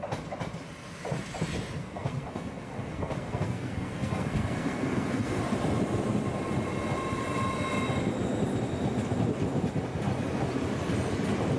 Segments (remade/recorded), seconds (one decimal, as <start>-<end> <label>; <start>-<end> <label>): 0.0-1.8 recorded; 1.8-5.4 remade; 5.4-11.6 recorded